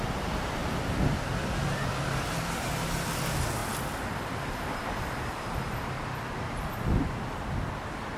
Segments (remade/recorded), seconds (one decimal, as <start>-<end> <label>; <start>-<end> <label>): 0.0-8.2 recorded